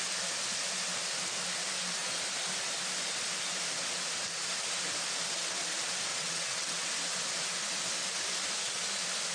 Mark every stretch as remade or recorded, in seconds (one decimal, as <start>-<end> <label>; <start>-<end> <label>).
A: 0.0-6.1 recorded; 6.1-6.9 remade; 6.9-9.3 recorded